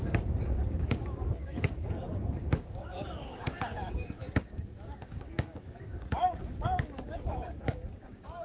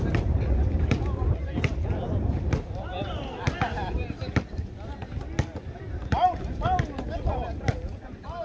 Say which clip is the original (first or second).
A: second